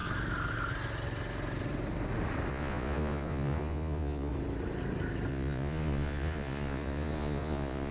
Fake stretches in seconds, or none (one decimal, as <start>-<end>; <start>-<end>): 2.5-4.3; 5.3-7.9